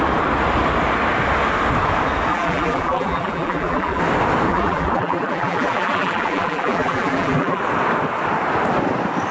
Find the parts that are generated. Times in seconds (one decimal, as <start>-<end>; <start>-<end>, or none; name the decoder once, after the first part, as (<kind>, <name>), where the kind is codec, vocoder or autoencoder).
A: 2.3-4.0 (vocoder, BigVGAN v2); 4.5-7.6

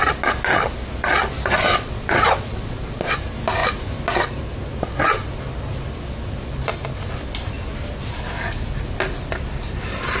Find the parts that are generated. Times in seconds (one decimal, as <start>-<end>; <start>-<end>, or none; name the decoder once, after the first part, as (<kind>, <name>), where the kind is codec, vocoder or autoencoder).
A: 1.7-3.1 (vocoder, Vocos)

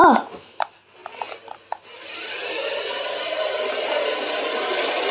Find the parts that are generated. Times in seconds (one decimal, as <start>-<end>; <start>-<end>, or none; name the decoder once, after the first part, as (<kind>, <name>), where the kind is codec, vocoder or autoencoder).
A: 0.0-0.6 (autoencoder, DAC-VAE)

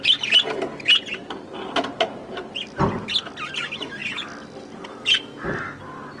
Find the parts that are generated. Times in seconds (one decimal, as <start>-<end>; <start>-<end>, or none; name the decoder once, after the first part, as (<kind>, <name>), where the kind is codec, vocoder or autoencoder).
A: none

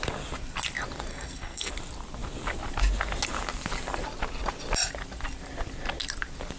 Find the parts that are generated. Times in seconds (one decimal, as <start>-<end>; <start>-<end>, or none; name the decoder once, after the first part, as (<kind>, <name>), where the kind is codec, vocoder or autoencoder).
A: 1.1-1.7 (codec, SNAC)